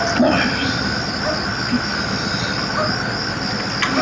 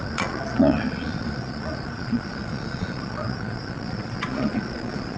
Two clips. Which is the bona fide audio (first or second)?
first